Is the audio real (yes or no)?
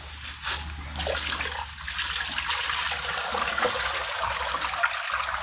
yes